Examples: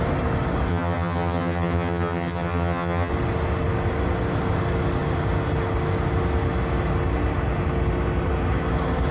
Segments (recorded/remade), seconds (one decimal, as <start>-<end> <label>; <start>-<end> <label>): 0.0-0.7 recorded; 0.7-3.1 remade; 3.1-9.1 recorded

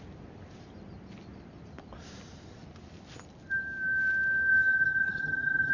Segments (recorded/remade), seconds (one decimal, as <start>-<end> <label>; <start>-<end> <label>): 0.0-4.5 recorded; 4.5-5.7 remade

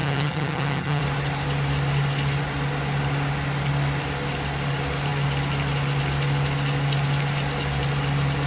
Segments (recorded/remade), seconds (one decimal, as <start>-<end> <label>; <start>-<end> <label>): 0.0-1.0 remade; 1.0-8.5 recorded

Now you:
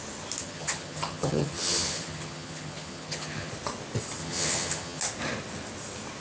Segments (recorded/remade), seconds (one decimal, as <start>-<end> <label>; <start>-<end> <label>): 0.0-0.4 recorded; 0.4-3.5 remade; 3.5-4.2 recorded; 4.2-5.0 remade; 5.0-6.2 recorded

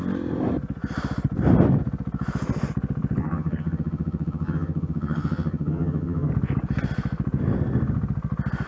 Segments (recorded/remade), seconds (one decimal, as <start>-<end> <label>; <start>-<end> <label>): 0.0-3.2 recorded; 3.2-6.3 remade; 6.3-8.7 recorded

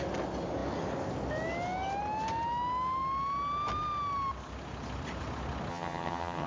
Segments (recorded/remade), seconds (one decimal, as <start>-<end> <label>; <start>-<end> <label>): 0.0-5.7 recorded; 5.7-6.5 remade